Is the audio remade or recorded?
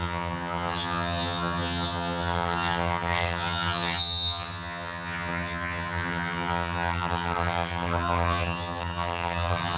remade